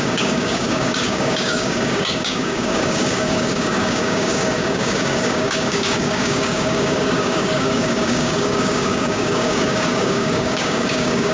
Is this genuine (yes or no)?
no